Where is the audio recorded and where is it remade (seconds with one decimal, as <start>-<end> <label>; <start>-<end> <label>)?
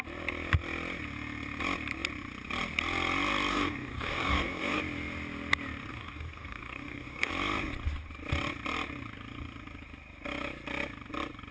0.0-3.5 recorded; 3.5-4.8 remade; 4.8-5.9 recorded; 5.9-7.3 remade; 7.3-11.5 recorded